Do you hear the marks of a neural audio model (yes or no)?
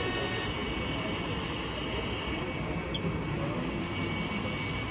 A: no